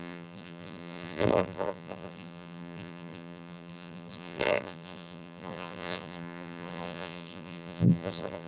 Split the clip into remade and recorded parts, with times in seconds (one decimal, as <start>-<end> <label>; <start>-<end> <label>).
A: 0.0-8.5 remade